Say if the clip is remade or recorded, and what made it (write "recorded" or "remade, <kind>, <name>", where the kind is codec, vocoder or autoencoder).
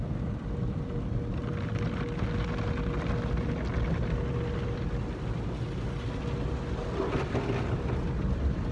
recorded